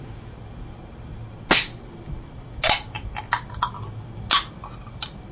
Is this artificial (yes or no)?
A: no